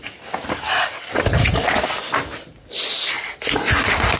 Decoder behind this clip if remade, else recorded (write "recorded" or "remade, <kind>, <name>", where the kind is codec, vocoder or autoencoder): recorded